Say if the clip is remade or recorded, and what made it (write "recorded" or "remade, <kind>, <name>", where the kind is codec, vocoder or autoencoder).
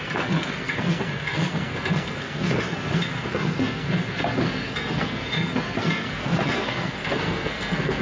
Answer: remade, codec, SNAC